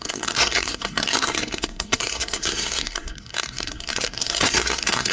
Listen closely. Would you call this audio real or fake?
fake